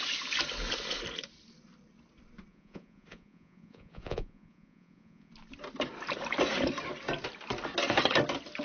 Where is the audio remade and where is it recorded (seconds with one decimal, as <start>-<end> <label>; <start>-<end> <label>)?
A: 0.0-2.5 recorded; 2.5-5.3 remade; 5.3-8.6 recorded